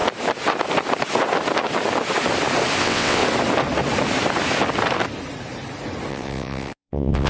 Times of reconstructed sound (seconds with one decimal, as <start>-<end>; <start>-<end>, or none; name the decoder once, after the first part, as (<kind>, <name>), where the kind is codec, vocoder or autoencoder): 2.8-3.2 (vocoder, WaveNeXt); 6.1-7.3